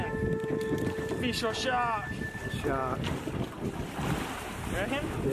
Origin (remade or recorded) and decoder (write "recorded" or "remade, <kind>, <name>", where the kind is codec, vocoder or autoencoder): recorded